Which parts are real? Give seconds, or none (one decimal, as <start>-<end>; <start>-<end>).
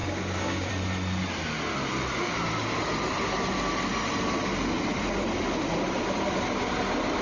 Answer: 0.7-7.2